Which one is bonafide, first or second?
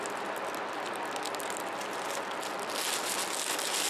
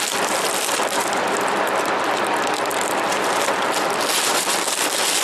first